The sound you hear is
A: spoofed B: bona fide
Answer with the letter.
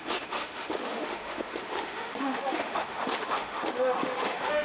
A